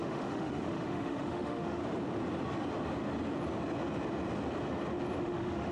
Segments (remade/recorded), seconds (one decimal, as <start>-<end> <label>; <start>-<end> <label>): 0.0-1.8 remade; 1.8-5.2 recorded; 5.2-5.7 remade